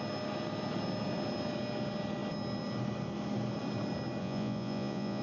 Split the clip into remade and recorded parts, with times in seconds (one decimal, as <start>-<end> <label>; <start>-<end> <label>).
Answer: 0.0-4.2 recorded; 4.2-5.2 remade